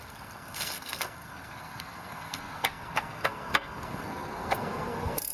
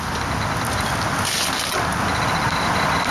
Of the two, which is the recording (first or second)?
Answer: second